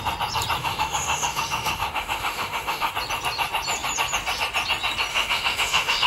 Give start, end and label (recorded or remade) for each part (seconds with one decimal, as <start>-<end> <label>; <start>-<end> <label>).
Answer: 0.0-0.6 recorded; 0.6-2.9 remade; 2.9-5.1 recorded; 5.1-6.1 remade